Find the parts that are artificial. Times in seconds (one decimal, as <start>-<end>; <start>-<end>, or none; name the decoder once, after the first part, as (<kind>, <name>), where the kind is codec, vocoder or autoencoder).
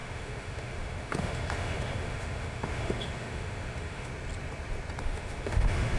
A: 0.0-4.1 (autoencoder, DAC-VAE); 5.0-6.0